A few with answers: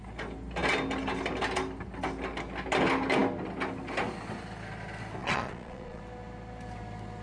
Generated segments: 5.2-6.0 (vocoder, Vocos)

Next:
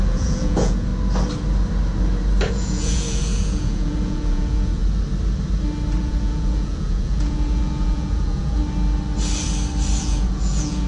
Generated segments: 0.0-0.9 (vocoder, Vocos); 2.5-4.8; 6.0-8.6; 10.0-10.9

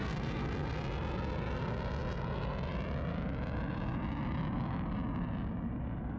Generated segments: none

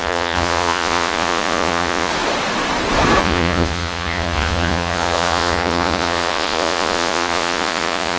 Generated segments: 0.0-2.1 (vocoder, Vocos); 3.2-8.2

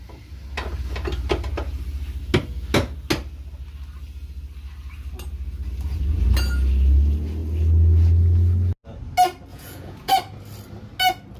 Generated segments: 9.5-10.1 (vocoder, Vocos)

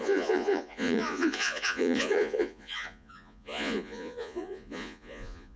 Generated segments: 0.0-5.6 (vocoder, Vocos)

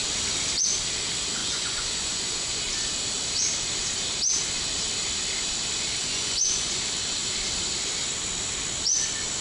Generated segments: 1.4-2.6 (vocoder, Vocos); 6.0-6.8

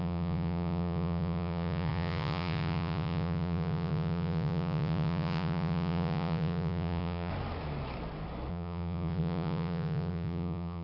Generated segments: 0.0-7.3 (vocoder, Vocos); 8.5-10.8